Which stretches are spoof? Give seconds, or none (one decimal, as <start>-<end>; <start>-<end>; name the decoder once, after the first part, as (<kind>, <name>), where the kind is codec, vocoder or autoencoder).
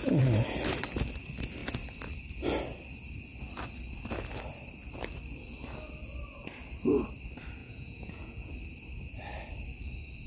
7.6-8.5 (vocoder, Vocos)